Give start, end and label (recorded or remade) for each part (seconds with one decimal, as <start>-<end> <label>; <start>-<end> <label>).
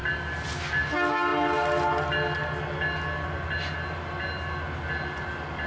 0.0-5.7 recorded